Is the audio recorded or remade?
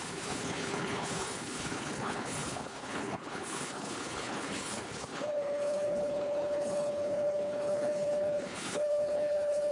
remade